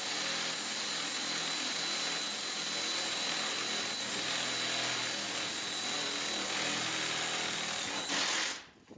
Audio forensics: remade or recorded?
recorded